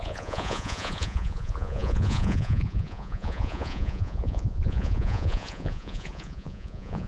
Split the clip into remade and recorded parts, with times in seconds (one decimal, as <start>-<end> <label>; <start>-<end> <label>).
0.0-7.1 remade